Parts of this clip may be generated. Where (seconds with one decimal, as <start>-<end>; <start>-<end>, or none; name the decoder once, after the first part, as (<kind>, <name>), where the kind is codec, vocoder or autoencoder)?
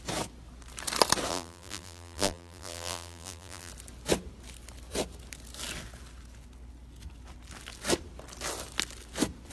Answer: 1.3-3.7 (vocoder, BigVGAN v2)